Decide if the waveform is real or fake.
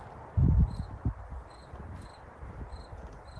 real